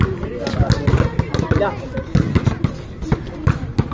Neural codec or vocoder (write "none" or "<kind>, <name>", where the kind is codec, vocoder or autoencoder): none